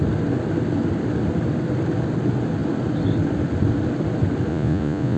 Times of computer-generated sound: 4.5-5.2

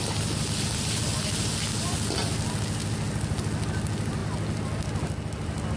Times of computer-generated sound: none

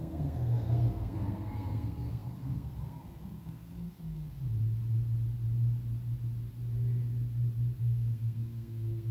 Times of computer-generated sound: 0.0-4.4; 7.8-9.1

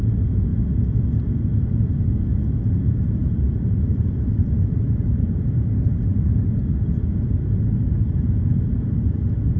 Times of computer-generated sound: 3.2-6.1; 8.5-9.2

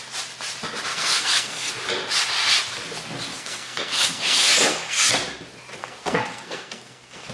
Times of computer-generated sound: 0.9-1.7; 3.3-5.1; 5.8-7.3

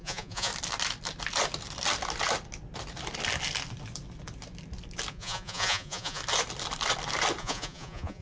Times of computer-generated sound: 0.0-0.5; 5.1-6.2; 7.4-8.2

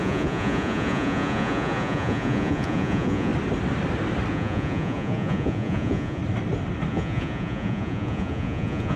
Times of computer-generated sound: 0.0-3.3; 4.3-6.2; 6.9-9.0

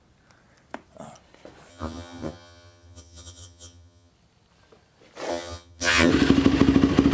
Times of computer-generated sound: 1.7-4.1; 5.3-6.1